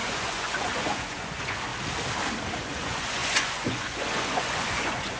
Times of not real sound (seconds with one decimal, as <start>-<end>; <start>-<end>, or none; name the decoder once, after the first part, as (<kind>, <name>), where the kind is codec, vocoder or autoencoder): 0.0-1.7 (vocoder, Vocos); 2.6-5.2